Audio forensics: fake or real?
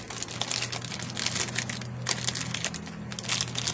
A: real